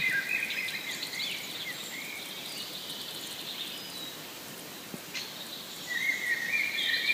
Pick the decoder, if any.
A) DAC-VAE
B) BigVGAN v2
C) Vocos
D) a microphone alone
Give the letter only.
B